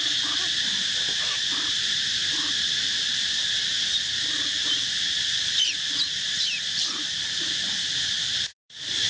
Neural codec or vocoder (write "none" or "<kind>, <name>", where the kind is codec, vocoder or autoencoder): vocoder, BigVGAN v2